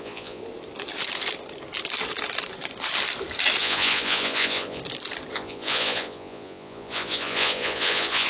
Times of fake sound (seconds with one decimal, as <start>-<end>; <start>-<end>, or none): 0.0-0.4; 3.6-4.8; 5.3-8.3